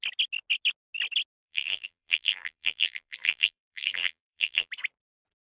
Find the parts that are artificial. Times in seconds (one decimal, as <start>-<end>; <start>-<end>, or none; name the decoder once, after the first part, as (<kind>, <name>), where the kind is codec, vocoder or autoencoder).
1.4-4.7 (vocoder, BigVGAN v2)